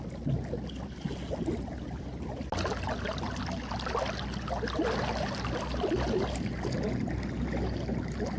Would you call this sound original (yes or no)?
yes